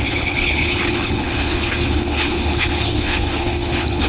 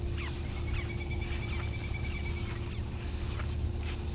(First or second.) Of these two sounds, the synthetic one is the first